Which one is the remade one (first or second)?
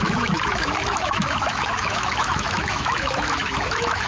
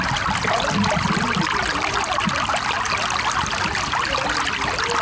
first